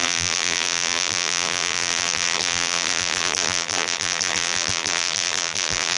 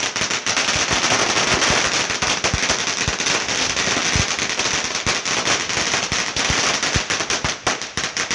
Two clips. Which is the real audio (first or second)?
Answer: second